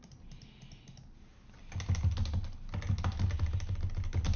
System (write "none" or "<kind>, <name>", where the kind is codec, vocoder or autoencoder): none